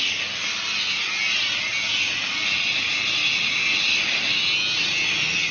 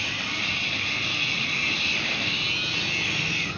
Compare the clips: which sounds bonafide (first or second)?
first